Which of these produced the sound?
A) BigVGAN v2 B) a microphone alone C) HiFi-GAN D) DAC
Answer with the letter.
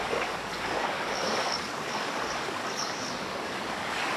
D